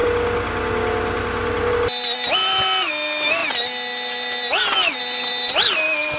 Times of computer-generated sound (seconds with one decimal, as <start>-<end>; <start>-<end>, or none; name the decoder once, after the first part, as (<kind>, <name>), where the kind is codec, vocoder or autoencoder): none